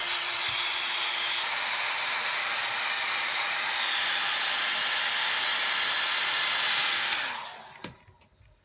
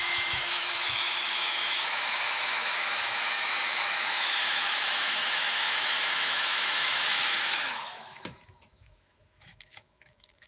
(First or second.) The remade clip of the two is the second